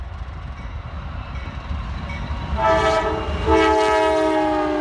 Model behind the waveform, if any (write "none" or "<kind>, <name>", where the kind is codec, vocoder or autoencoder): none